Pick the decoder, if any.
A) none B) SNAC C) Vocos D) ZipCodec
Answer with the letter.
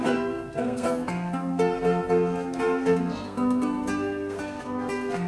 B